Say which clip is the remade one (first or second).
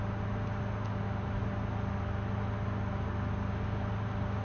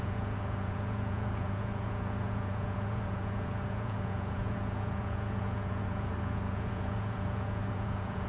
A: second